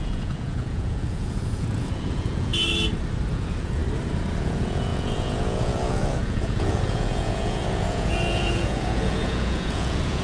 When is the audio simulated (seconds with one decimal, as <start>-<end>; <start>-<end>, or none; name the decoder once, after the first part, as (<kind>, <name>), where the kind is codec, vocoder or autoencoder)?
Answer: 0.0-2.5 (vocoder, Vocos); 3.3-3.8; 4.4-10.2